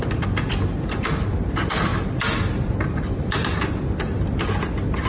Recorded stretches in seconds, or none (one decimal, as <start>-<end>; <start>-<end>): 0.0-5.1